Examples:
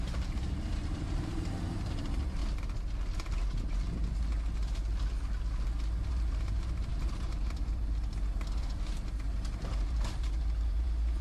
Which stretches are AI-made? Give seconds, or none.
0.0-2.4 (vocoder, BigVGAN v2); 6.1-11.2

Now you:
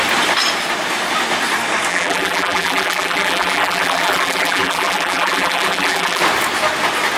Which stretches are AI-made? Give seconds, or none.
1.9-6.2 (vocoder, BigVGAN v2)

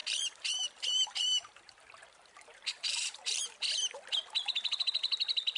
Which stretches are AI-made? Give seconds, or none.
0.0-3.4 (vocoder, BigVGAN v2)

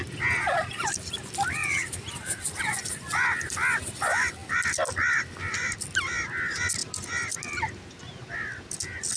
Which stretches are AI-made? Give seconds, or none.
1.6-2.6 (vocoder, BigVGAN v2)

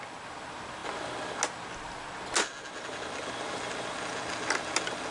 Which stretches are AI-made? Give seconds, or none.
none

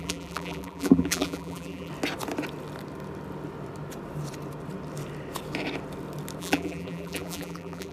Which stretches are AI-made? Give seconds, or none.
0.0-1.9 (vocoder, BigVGAN v2); 6.4-7.9

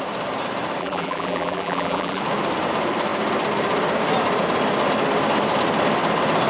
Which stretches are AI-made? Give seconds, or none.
0.8-2.2 (vocoder, BigVGAN v2)